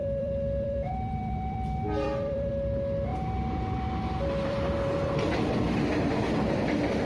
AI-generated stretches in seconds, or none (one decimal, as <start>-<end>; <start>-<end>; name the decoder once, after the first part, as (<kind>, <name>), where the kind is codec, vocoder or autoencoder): 0.0-2.5 (vocoder, BigVGAN v2); 3.1-7.1